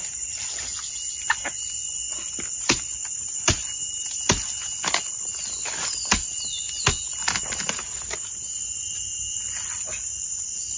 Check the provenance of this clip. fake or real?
real